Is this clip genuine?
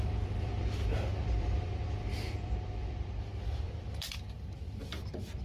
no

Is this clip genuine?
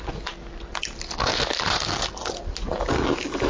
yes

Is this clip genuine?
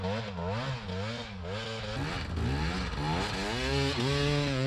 yes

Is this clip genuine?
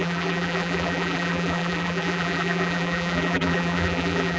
no